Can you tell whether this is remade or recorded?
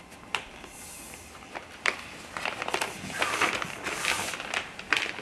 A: recorded